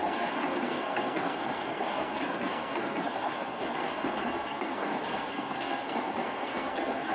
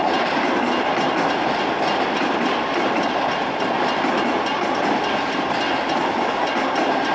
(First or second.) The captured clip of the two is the second